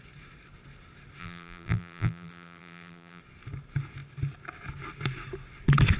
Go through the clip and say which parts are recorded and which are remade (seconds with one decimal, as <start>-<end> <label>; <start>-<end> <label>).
0.0-1.2 recorded; 1.2-3.2 remade; 3.2-6.0 recorded

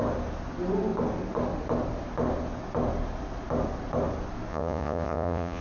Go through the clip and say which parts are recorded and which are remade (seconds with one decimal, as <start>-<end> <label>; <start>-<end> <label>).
0.0-4.5 recorded; 4.5-5.6 remade

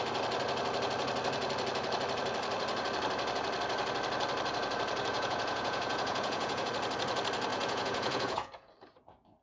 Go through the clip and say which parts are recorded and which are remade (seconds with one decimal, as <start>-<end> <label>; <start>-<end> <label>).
0.0-5.1 recorded; 5.1-6.7 remade; 6.7-7.5 recorded; 7.5-8.7 remade; 8.7-9.4 recorded

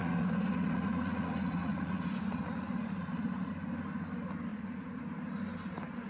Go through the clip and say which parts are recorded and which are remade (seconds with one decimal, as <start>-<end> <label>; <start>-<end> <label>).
0.0-3.5 remade; 3.5-4.5 recorded; 4.5-5.0 remade; 5.0-6.1 recorded

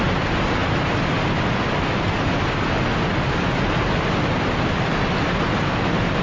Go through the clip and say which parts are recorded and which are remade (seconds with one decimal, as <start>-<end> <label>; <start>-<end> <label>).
0.0-6.2 recorded

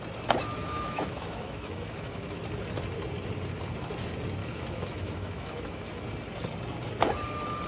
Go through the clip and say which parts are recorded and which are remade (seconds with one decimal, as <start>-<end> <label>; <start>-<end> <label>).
0.0-0.6 recorded; 0.6-2.4 remade; 2.4-4.4 recorded; 4.4-6.0 remade; 6.0-7.7 recorded